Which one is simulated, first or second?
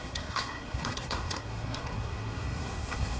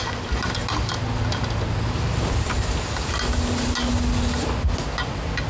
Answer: first